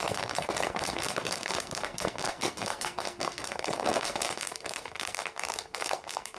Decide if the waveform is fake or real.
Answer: fake